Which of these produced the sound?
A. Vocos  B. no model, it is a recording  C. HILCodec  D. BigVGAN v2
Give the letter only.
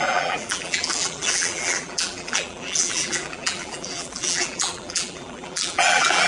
D